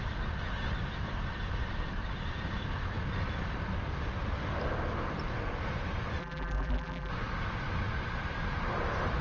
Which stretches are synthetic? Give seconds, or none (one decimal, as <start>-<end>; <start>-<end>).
6.2-7.1